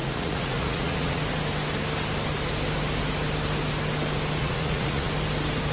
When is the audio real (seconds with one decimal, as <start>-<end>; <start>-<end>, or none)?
1.2-4.4; 5.1-5.7